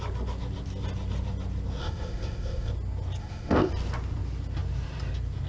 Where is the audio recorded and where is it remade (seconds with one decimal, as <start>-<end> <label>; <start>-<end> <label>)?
0.0-1.8 recorded; 1.8-2.7 remade; 2.7-3.2 recorded; 3.2-3.7 remade; 3.7-5.5 recorded